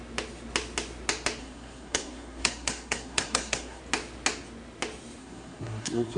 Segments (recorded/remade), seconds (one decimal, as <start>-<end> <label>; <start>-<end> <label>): 0.0-1.4 recorded; 1.4-3.8 remade; 3.8-5.2 recorded; 5.2-6.2 remade